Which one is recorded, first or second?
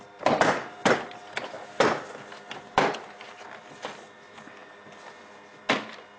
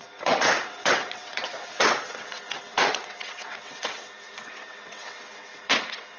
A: first